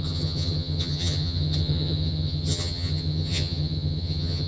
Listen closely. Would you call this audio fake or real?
fake